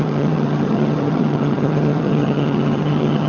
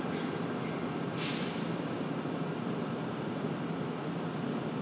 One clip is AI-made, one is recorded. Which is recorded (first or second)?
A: second